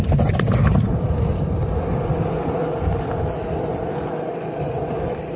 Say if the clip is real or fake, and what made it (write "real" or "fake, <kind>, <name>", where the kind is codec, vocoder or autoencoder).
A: real